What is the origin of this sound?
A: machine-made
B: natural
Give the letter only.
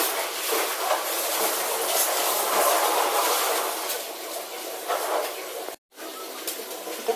B